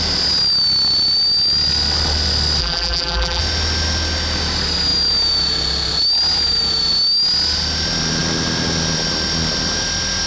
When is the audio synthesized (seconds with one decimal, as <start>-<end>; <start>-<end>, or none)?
2.6-3.4